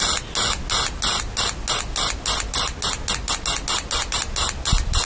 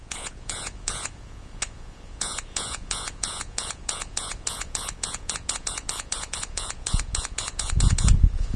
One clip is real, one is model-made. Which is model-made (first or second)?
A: second